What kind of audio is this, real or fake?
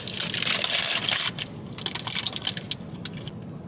real